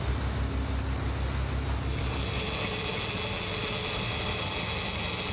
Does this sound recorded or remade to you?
recorded